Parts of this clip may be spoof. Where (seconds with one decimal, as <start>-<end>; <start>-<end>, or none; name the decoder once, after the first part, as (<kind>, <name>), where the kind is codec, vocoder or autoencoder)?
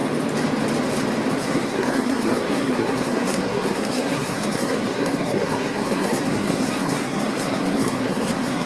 1.4-8.7 (codec, SNAC)